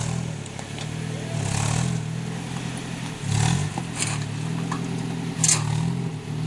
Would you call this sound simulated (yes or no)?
no